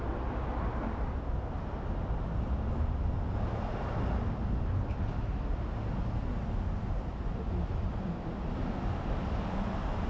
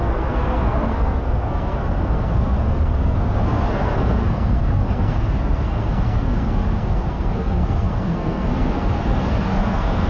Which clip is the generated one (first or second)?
second